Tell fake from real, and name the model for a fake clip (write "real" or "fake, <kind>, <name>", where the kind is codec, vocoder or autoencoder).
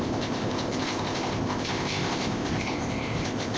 fake, codec, ZipCodec